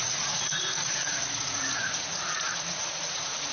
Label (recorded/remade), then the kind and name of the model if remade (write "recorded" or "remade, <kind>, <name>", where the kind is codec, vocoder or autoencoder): remade, vocoder, Vocos